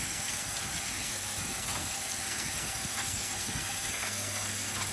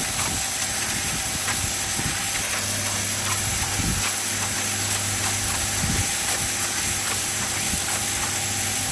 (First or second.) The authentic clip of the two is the second